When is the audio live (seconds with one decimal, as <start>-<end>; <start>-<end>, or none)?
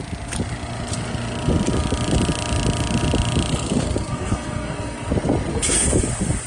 0.0-3.5; 5.1-5.5; 6.0-6.5